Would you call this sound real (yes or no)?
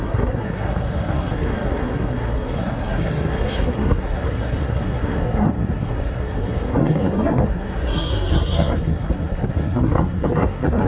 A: no